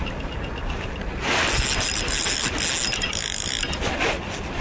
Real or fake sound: real